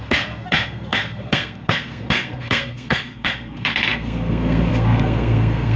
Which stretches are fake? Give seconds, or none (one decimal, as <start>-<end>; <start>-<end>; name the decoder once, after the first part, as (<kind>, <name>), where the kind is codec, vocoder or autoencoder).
0.0-5.8 (codec, SNAC)